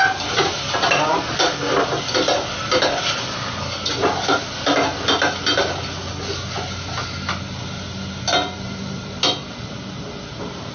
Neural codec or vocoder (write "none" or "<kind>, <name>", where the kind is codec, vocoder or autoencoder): none